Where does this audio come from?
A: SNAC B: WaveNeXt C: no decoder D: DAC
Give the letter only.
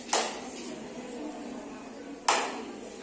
C